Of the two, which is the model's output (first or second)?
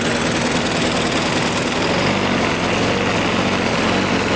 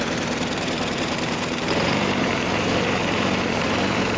second